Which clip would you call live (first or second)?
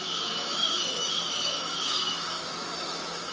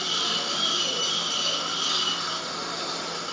second